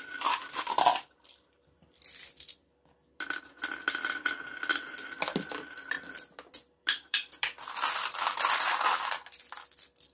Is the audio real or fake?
fake